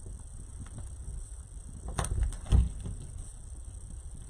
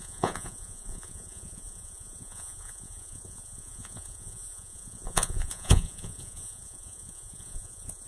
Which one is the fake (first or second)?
second